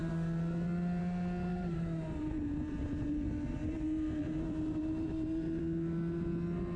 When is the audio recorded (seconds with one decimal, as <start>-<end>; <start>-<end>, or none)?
0.0-1.5; 5.6-6.8